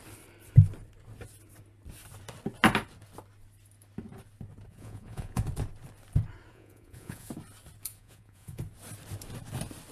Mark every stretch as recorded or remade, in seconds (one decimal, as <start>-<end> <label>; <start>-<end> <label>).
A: 0.0-4.7 recorded; 4.7-5.4 remade; 5.4-6.5 recorded; 6.5-7.3 remade; 7.3-7.9 recorded; 7.9-8.6 remade; 8.6-9.9 recorded